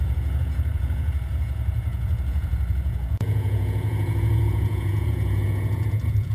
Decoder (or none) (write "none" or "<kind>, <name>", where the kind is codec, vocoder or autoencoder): vocoder, Vocos